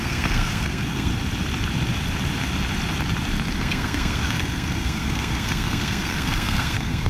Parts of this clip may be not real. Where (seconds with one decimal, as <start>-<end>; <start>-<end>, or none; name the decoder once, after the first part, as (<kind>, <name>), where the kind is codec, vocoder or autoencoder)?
0.0-1.1 (codec, SNAC); 3.6-7.1